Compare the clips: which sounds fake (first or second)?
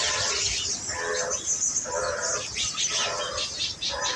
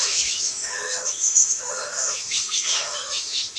second